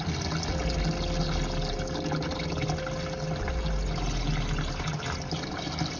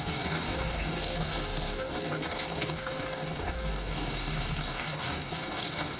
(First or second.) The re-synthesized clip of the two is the second